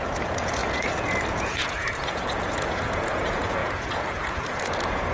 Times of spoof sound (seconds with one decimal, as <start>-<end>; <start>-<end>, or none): 0.0-5.1